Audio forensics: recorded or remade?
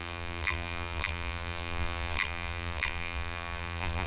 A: remade